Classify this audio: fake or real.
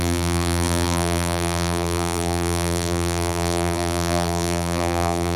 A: fake